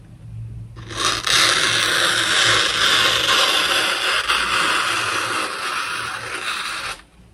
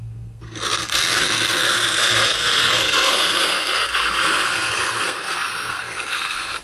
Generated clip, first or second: second